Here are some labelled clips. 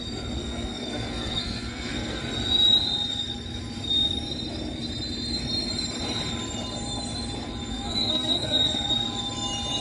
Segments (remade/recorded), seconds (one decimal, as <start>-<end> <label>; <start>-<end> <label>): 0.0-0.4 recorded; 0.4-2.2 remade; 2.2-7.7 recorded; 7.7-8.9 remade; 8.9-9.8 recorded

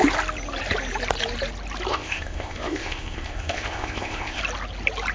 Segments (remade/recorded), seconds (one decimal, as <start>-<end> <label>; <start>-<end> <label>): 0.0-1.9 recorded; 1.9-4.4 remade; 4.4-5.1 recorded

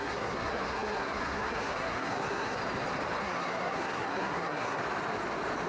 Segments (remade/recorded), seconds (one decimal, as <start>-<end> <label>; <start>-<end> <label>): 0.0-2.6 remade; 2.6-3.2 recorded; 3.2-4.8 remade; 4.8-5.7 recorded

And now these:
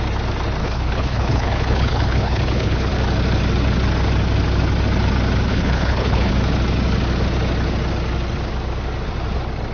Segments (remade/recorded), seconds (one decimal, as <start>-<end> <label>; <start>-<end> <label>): 0.0-0.6 recorded; 0.6-2.9 remade; 2.9-5.5 recorded; 5.5-6.3 remade; 6.3-9.7 recorded

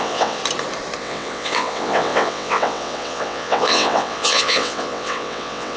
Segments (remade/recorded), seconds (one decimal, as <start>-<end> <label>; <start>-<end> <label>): 0.0-0.4 remade; 0.4-1.0 recorded; 1.0-5.8 remade

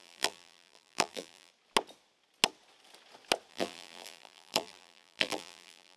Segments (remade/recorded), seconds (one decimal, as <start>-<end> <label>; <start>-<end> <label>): 0.0-1.5 remade; 1.5-3.5 recorded; 3.5-6.0 remade

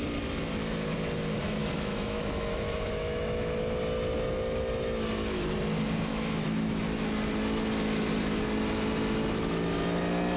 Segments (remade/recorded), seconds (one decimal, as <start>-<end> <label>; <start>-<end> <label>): 0.0-1.6 recorded; 1.6-3.6 remade; 3.6-6.1 recorded; 6.1-6.8 remade; 6.8-10.4 recorded

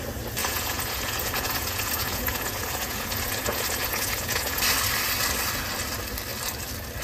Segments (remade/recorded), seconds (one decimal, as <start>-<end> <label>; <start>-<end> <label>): 0.0-0.4 recorded; 0.4-4.6 remade; 4.6-7.0 recorded